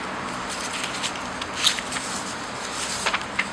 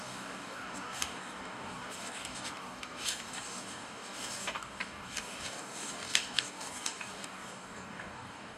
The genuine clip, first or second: first